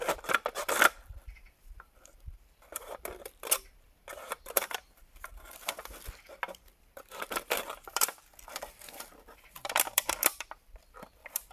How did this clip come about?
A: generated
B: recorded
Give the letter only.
A